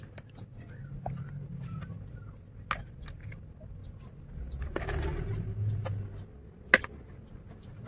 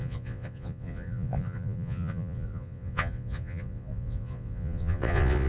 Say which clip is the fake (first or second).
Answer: second